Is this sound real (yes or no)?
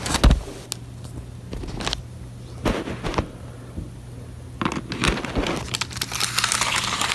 yes